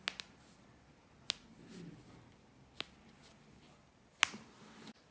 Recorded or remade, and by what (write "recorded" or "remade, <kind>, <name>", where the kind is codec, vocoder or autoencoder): recorded